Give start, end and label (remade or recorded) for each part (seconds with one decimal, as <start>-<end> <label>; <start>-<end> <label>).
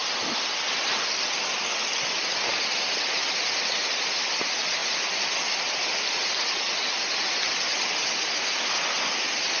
0.0-9.6 recorded